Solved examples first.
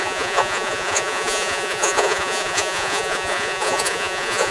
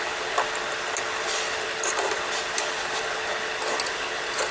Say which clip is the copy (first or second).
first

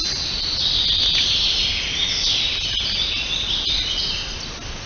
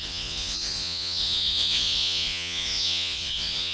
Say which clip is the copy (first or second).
second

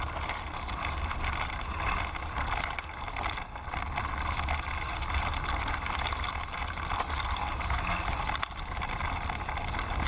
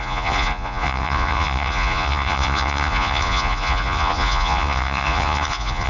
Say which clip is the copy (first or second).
second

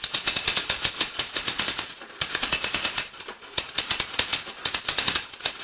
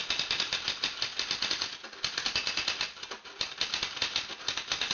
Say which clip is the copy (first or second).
first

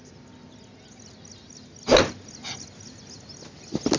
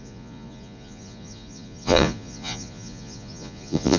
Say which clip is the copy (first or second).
second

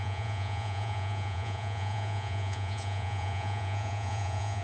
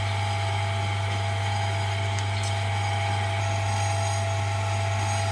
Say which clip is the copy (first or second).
first